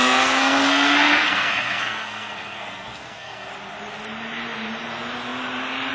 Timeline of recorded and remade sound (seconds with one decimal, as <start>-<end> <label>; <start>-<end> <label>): 0.0-3.5 remade; 3.5-5.9 recorded